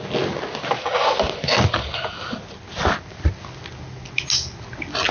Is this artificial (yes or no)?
no